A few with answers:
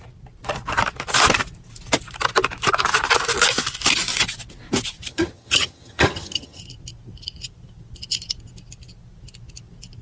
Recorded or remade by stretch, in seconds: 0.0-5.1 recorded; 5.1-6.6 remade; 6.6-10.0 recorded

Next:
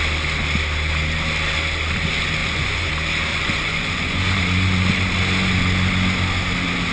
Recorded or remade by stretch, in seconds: 0.0-2.4 recorded; 2.4-2.9 remade; 2.9-3.3 recorded; 3.3-4.4 remade; 4.4-6.9 recorded